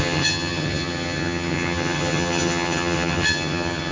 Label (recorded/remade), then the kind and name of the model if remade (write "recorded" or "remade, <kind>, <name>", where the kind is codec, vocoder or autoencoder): remade, vocoder, HiFi-GAN